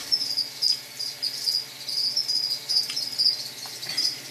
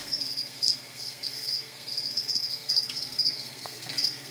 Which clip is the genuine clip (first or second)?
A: first